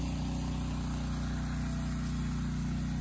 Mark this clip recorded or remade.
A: recorded